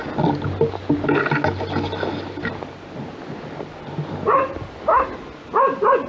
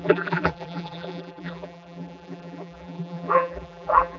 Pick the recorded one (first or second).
first